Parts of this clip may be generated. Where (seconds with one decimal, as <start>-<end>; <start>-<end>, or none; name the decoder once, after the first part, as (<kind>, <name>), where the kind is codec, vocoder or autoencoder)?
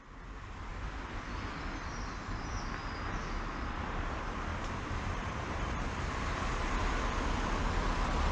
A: 4.5-6.0 (vocoder, BigVGAN v2)